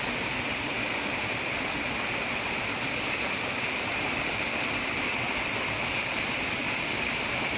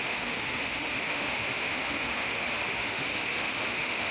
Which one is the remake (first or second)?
second